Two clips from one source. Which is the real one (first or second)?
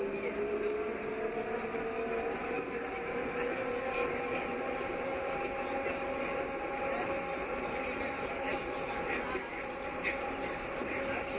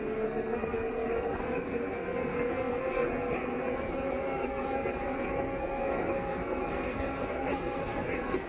first